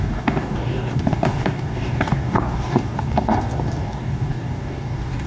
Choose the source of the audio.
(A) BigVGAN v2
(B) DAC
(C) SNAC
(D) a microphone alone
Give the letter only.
B